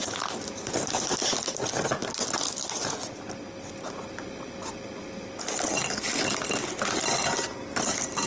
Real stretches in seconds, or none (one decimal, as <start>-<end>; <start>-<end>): 0.0-8.3